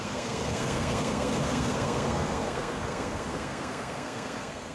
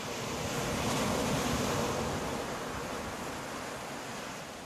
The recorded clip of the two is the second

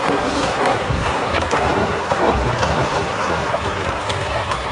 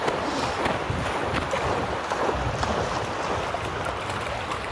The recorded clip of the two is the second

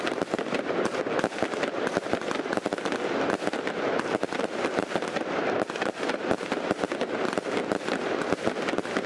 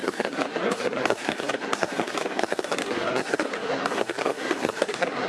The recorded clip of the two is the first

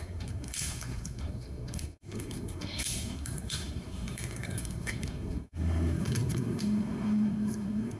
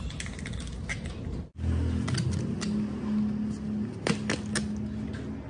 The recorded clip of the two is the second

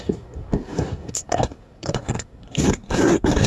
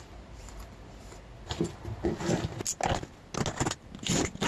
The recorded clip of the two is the second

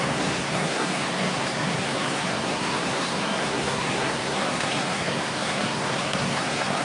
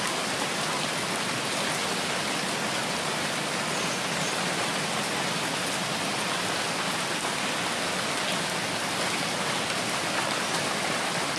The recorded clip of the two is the second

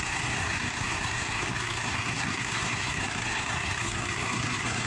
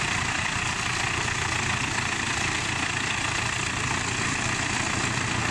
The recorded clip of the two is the second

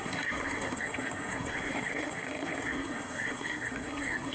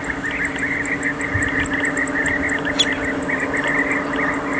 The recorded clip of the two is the second